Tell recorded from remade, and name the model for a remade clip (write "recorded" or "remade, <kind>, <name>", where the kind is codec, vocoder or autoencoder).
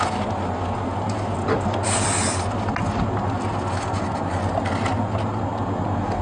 recorded